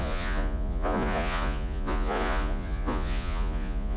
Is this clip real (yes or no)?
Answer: no